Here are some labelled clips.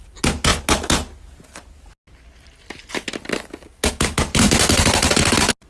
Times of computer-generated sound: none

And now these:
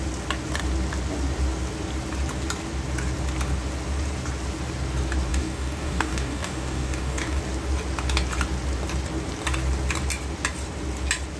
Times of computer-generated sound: 5.3-7.4 (codec, DAC)

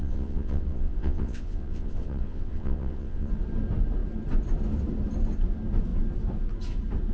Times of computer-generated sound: 0.0-3.3 (vocoder, WaveNeXt)

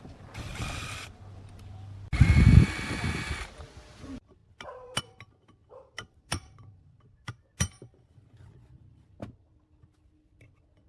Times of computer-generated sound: 5.6-7.3 (vocoder, BigVGAN v2)

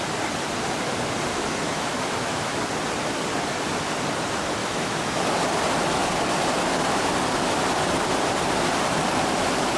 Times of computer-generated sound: 1.3-2.6 (autoencoder, DAC-VAE); 4.6-5.2